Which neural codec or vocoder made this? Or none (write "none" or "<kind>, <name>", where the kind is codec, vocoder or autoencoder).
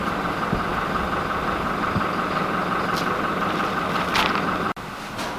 none